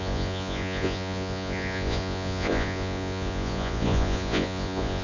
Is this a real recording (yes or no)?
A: no